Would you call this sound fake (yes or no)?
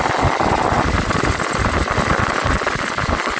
no